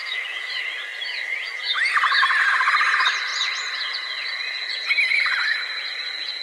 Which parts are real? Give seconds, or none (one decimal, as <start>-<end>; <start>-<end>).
0.6-6.4